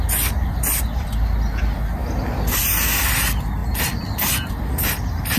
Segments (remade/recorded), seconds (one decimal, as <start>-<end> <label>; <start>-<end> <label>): 0.0-5.4 recorded